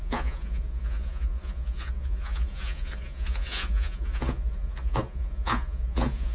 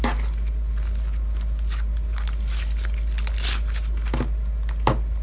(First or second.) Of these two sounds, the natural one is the second